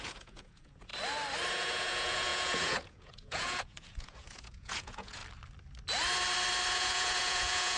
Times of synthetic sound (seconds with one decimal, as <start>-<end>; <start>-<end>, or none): 0.0-0.9; 1.5-5.2; 6.7-7.8